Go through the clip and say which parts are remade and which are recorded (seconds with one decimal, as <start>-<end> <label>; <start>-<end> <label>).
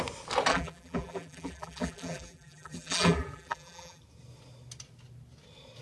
0.0-0.5 recorded; 0.5-4.0 remade; 4.0-5.8 recorded